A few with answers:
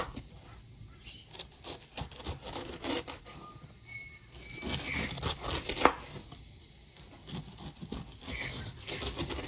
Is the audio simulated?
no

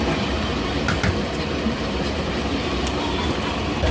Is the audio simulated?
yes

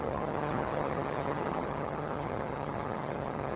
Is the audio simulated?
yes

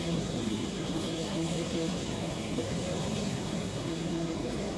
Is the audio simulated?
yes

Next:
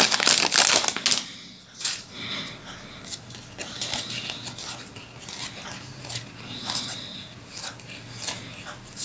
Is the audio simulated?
no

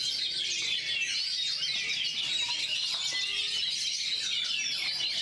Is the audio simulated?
no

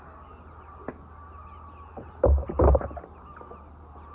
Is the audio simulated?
no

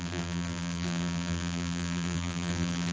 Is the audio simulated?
yes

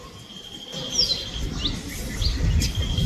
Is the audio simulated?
no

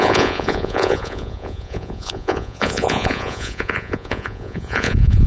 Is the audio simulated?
yes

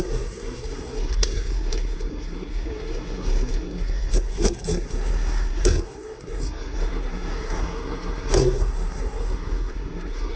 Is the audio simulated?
yes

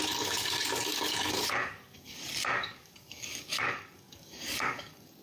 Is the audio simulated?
yes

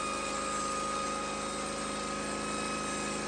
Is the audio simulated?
no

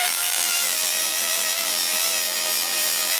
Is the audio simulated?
yes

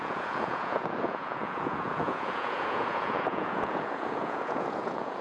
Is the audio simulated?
yes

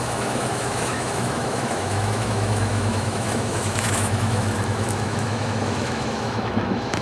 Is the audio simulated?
yes